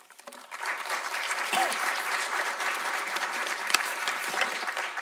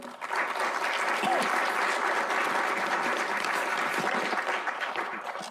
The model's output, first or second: first